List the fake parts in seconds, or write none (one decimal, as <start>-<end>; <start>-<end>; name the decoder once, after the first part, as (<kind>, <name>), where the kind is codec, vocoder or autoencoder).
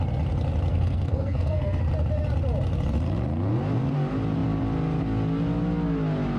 0.7-1.8 (codec, SNAC)